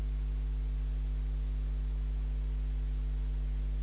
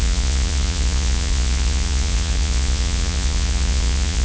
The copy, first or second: second